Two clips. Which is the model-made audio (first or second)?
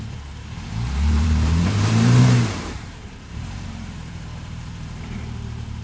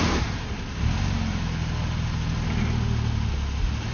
first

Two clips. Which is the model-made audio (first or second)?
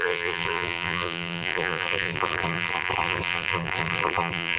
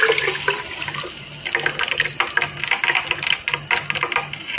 first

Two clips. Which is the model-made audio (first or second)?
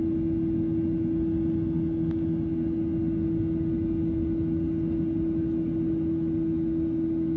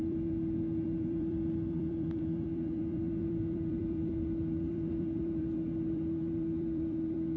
second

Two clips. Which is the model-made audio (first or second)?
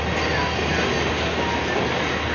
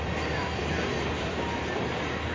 second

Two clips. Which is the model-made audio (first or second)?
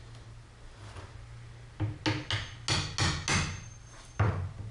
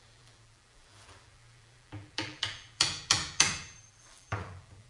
second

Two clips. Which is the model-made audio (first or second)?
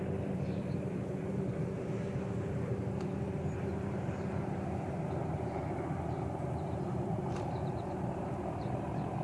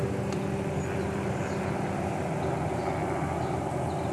first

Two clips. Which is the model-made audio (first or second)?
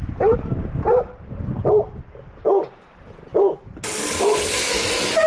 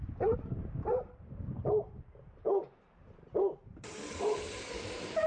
second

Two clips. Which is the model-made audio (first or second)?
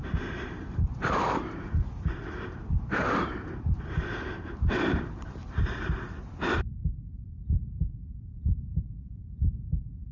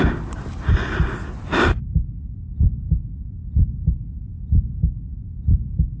first